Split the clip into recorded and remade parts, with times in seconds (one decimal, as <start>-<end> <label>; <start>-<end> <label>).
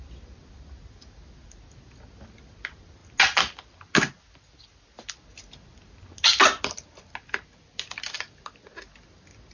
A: 0.0-9.5 recorded